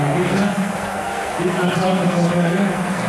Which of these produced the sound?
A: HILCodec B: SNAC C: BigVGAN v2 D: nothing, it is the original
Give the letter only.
B